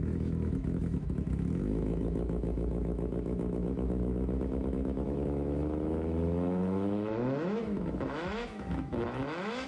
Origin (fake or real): fake